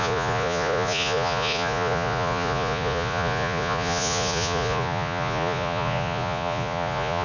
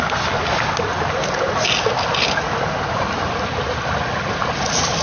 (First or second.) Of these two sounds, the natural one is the second